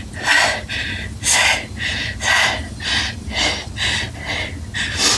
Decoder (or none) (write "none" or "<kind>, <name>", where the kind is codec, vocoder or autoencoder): none